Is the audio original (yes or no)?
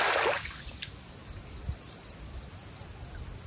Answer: yes